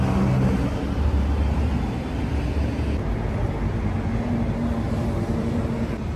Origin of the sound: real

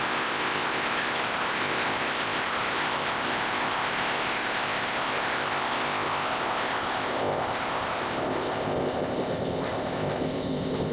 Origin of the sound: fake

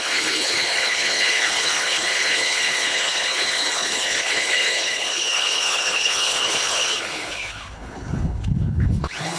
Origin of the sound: fake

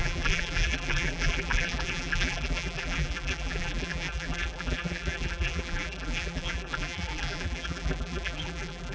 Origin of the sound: fake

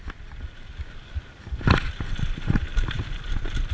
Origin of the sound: real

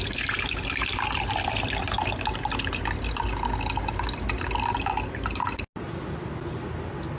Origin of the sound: real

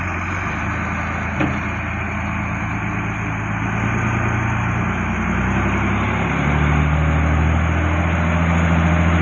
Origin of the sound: real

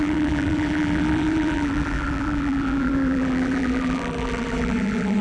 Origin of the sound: fake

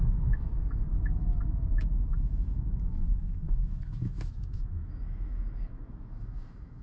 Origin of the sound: fake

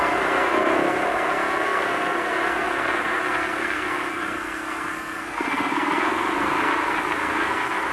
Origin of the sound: fake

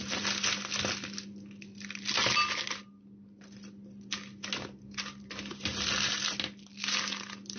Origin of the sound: real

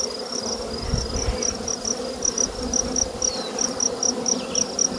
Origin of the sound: real